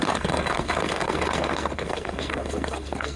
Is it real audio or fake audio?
fake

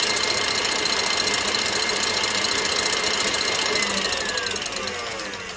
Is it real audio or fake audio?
real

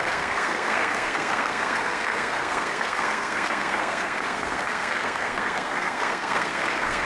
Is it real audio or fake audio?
fake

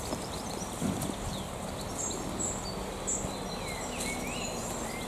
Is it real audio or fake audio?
real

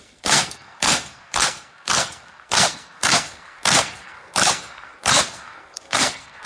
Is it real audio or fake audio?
fake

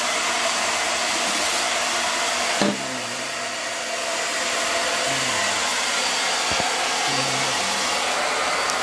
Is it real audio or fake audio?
real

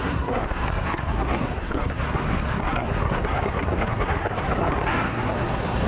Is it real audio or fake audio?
fake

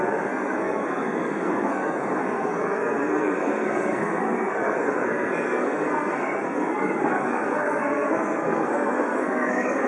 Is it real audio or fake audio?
fake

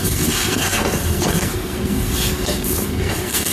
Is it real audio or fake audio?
fake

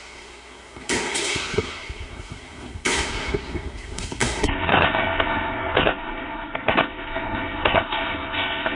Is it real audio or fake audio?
fake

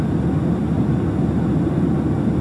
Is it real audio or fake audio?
real